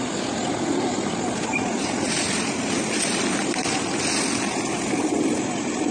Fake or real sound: real